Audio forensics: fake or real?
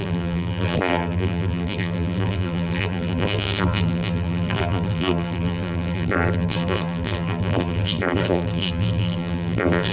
fake